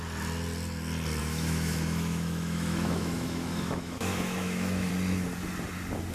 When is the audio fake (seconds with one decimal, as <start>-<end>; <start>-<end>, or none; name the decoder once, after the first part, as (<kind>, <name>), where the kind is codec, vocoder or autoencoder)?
1.2-4.9 (autoencoder, DAC-VAE)